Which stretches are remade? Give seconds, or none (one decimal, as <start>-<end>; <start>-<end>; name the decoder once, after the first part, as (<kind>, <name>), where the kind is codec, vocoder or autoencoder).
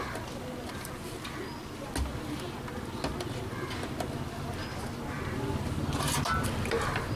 none